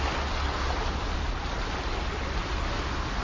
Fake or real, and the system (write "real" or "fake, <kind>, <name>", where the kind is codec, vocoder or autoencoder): real